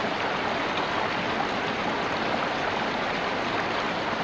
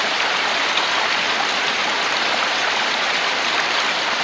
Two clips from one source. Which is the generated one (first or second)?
second